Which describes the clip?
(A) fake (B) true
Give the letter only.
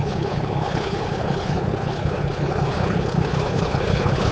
A